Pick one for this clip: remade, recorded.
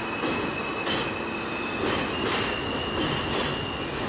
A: recorded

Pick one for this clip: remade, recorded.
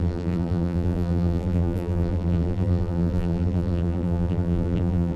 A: remade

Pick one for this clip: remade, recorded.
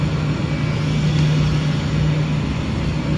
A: recorded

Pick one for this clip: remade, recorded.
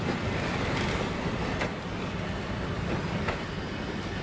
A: recorded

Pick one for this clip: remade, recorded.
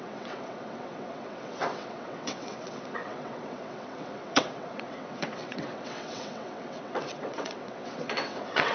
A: remade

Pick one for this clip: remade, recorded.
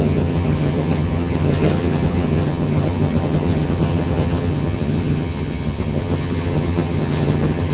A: remade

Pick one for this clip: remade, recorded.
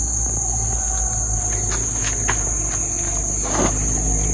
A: recorded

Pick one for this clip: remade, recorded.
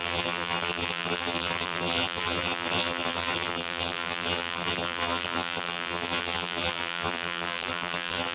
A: remade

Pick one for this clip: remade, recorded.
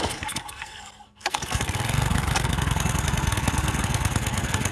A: remade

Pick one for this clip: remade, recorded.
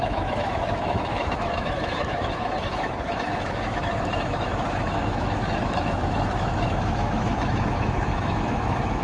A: remade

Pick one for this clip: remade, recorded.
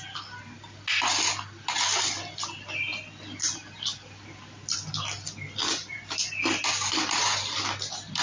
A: recorded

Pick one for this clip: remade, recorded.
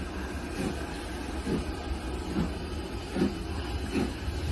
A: recorded